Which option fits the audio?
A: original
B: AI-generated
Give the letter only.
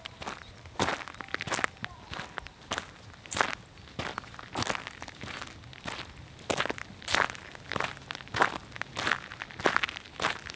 A